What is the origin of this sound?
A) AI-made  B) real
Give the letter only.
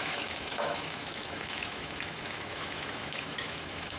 A